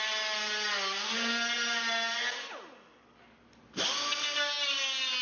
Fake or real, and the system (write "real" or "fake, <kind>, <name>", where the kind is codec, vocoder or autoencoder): real